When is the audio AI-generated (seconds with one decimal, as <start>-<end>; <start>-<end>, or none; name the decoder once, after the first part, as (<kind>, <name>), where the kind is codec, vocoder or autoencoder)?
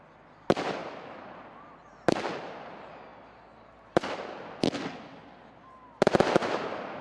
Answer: none